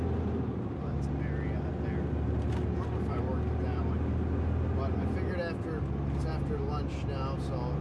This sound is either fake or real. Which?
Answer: real